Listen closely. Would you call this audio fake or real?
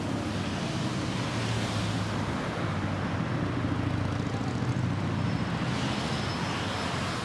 real